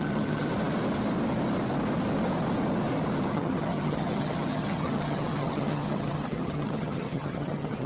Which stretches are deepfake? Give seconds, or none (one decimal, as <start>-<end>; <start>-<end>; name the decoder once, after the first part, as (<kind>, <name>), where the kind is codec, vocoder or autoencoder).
0.0-0.5 (vocoder, HiFi-GAN); 3.3-7.9